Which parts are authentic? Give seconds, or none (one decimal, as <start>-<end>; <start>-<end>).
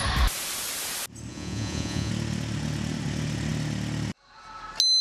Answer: 0.0-1.3; 2.1-5.0